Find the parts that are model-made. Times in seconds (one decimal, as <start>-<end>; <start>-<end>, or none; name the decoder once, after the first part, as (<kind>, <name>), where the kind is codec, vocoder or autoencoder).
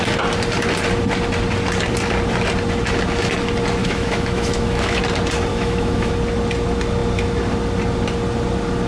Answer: 3.8-5.0 (autoencoder, DAC-VAE); 5.5-6.1